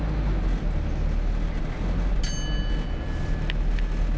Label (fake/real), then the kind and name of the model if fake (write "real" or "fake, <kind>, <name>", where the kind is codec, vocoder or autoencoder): real